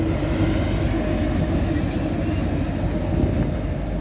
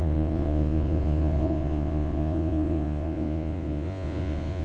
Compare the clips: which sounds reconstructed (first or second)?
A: second